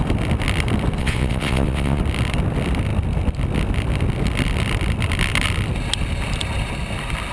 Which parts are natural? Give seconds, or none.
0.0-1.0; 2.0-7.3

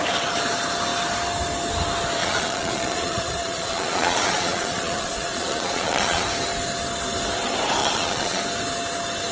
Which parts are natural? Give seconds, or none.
0.0-2.2; 6.2-7.8; 8.4-9.3

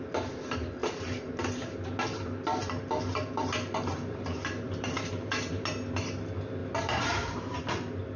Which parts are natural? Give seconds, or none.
0.0-0.8; 1.5-3.1; 5.3-6.6; 7.6-8.2

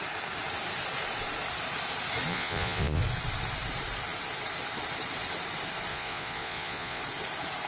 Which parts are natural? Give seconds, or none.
0.0-2.3; 3.0-5.9; 7.0-7.7

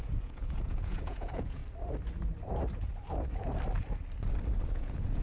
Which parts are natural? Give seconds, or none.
1.6-4.7

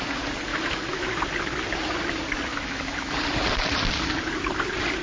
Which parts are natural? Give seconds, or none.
0.0-0.5; 1.1-2.5; 3.1-5.0